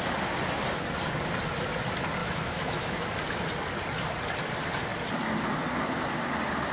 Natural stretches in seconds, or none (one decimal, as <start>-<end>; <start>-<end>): 0.0-2.2; 3.1-6.7